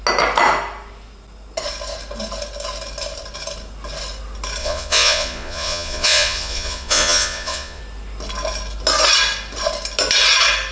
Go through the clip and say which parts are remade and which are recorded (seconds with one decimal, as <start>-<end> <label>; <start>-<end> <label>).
0.0-4.6 recorded; 4.6-7.8 remade; 7.8-10.7 recorded